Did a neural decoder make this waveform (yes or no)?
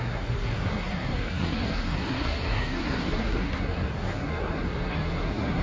yes